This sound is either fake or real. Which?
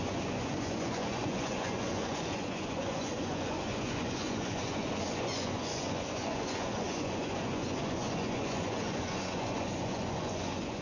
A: fake